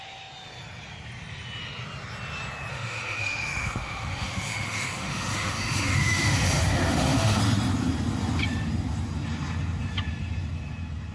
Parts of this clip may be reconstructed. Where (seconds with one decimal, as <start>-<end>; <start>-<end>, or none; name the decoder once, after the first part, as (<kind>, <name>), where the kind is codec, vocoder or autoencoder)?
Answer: 2.7-7.4 (autoencoder, DAC-VAE)